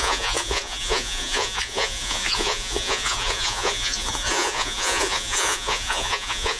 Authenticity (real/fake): fake